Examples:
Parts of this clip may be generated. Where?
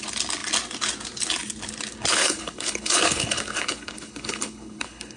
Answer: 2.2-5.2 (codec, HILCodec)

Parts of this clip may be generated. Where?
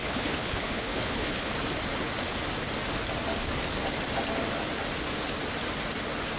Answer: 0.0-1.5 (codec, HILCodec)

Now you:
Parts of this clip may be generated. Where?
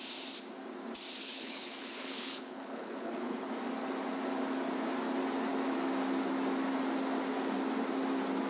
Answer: 1.2-3.5 (codec, HILCodec)